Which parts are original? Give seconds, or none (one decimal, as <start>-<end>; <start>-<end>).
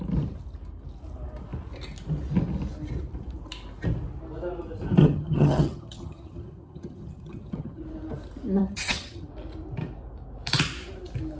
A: 0.0-5.0; 7.8-8.6; 9.3-11.4